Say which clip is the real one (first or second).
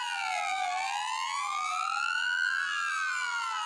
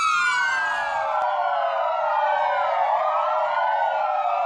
second